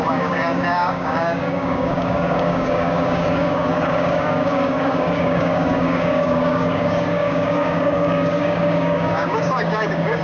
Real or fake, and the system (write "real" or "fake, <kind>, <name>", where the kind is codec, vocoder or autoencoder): fake, codec, DAC